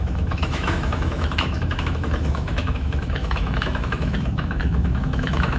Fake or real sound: fake